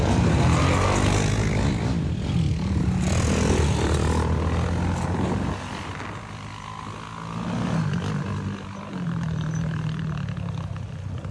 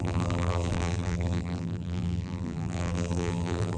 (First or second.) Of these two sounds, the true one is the first